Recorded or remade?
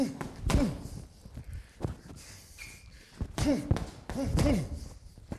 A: recorded